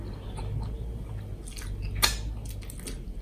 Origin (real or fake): real